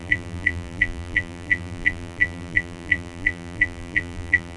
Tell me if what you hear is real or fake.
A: fake